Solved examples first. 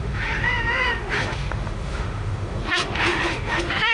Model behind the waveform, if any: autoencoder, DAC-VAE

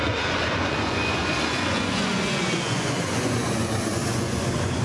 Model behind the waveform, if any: vocoder, Vocos